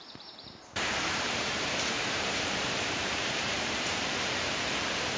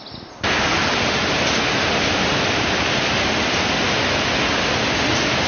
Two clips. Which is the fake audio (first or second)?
first